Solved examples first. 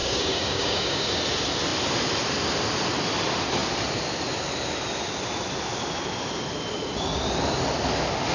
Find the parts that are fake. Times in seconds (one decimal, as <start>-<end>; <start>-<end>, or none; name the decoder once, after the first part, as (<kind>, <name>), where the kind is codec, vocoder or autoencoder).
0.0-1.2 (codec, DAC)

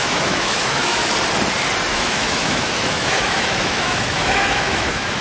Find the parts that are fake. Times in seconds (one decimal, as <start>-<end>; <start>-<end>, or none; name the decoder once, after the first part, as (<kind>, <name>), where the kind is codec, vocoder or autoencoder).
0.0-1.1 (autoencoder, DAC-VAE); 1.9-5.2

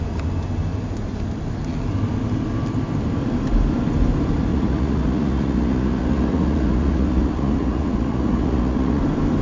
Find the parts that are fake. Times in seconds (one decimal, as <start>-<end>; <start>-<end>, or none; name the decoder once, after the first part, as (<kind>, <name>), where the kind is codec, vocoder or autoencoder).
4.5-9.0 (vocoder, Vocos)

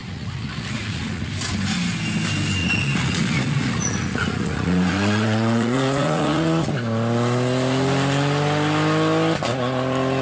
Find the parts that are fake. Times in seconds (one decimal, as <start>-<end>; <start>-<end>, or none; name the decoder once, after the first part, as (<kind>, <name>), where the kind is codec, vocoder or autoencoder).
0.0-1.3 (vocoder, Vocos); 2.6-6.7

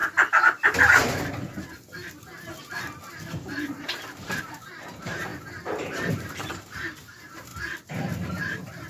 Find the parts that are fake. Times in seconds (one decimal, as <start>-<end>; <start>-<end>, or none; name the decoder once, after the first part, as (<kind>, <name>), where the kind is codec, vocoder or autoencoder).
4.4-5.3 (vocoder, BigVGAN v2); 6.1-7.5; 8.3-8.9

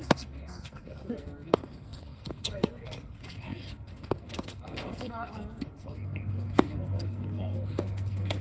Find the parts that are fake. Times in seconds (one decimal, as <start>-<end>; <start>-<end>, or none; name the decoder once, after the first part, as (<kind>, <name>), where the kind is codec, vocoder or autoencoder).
0.0-8.4 (codec, SNAC)

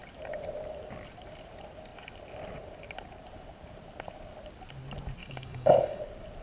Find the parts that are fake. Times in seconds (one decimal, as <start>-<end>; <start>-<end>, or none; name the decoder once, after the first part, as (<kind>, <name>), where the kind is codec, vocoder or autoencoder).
5.2-6.0 (codec, DAC)